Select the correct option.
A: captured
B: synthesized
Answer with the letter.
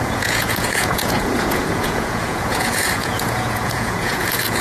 B